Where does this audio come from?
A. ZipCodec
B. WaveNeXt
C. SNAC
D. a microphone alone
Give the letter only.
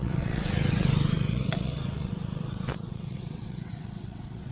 B